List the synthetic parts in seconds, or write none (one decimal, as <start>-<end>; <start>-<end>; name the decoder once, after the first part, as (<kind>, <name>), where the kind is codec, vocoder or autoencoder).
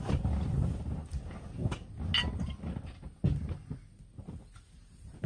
none